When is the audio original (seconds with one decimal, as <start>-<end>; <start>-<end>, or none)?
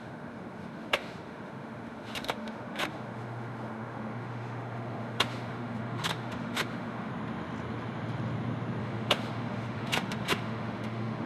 7.1-8.8